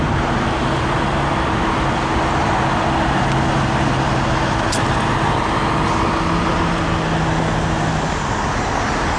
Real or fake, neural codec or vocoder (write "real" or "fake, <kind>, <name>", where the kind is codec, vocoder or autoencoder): real